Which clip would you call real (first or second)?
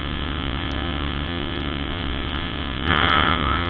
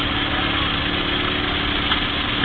second